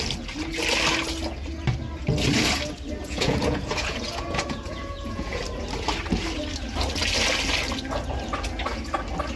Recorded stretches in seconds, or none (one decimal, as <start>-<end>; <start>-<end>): 0.0-3.0; 5.4-9.4